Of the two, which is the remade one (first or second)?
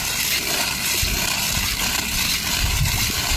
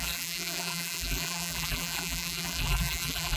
second